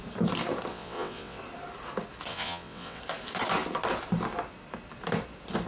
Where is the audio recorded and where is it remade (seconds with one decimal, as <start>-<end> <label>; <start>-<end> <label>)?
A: 0.0-0.7 recorded; 0.7-1.4 remade; 1.4-2.3 recorded; 2.3-3.0 remade; 3.0-5.7 recorded